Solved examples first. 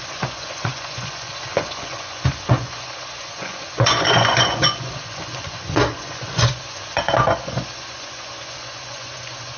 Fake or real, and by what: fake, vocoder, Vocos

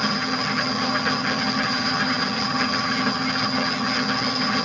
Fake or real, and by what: fake, vocoder, HiFi-GAN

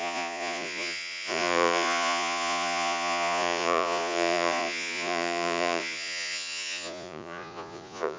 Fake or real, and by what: fake, vocoder, Vocos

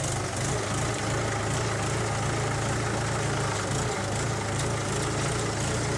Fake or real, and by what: real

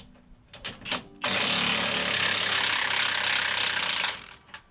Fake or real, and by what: real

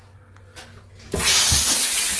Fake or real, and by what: real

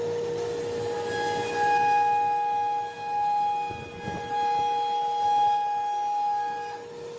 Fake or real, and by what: real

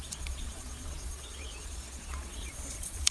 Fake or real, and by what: fake, vocoder, Vocos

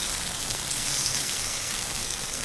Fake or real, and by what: fake, codec, SNAC